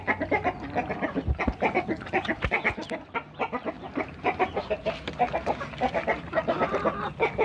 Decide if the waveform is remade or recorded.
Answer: recorded